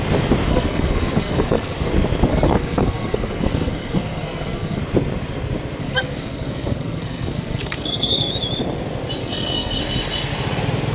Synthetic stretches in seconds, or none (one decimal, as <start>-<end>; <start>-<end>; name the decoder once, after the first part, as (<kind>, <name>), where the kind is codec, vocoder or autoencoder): 0.5-1.9 (codec, SNAC); 2.3-4.8; 5.8-8.3; 9.2-9.8